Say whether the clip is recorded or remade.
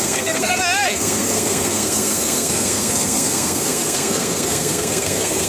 remade